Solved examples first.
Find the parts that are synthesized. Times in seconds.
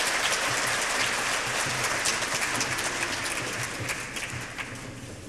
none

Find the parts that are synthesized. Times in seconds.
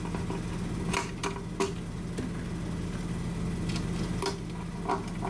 none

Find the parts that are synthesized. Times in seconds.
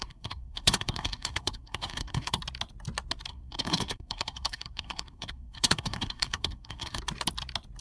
0.0-2.4 (codec, SNAC); 3.3-7.0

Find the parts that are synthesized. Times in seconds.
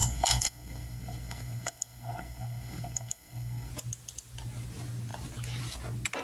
0.0-3.7 (codec, SNAC)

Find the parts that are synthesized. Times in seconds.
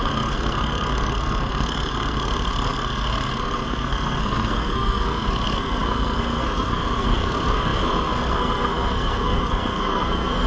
0.0-10.5 (codec, SNAC)